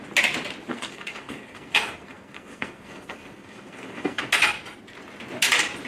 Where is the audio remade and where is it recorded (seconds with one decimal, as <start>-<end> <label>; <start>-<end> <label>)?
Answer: 0.0-0.7 recorded; 0.7-4.2 remade; 4.2-5.9 recorded